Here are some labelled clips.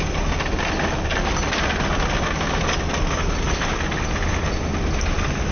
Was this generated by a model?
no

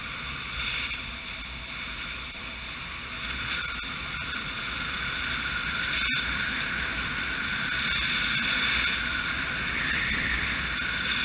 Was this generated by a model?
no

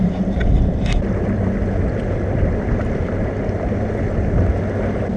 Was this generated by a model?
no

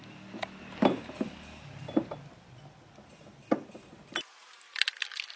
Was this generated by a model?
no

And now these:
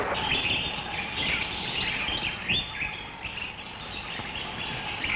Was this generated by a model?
no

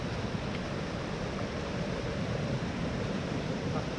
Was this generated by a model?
no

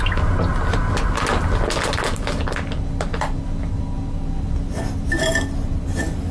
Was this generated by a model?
no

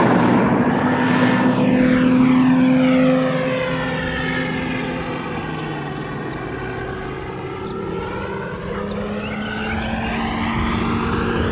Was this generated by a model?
no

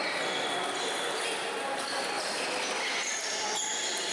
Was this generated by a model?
no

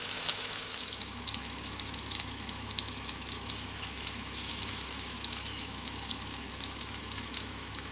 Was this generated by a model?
yes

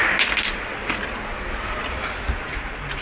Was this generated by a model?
no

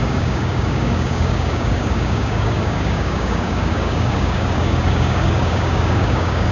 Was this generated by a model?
yes